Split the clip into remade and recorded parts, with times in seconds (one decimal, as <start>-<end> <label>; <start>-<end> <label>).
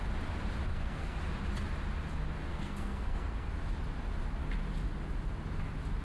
0.0-0.7 recorded; 0.7-1.2 remade; 1.2-2.5 recorded; 2.5-3.5 remade; 3.5-6.0 recorded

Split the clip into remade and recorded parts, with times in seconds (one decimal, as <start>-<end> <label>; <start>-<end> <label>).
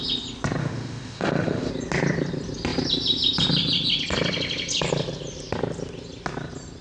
0.0-0.6 recorded; 0.6-1.7 remade; 1.7-6.8 recorded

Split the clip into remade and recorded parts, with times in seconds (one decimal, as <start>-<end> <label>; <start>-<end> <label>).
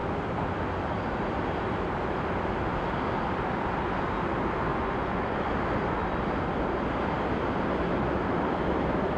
0.0-4.7 recorded; 4.7-5.5 remade; 5.5-9.2 recorded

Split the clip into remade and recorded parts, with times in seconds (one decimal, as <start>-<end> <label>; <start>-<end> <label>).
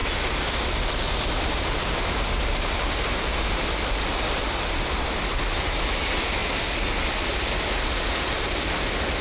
0.0-9.2 recorded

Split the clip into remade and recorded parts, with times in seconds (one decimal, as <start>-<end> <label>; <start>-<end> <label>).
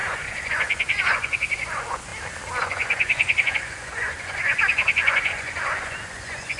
0.0-2.1 remade; 2.1-2.6 recorded; 2.6-6.6 remade